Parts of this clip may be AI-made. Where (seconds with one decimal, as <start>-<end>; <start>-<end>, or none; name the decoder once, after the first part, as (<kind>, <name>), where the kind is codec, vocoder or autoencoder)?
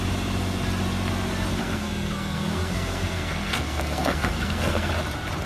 1.6-4.9 (codec, SNAC)